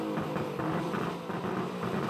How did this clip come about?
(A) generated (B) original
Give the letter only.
B